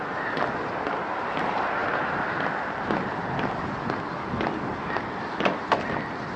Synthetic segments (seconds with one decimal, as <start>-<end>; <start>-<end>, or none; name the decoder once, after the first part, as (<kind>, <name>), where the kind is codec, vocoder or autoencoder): none